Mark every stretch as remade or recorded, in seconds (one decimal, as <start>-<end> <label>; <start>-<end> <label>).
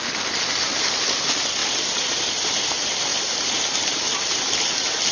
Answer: 0.0-5.1 recorded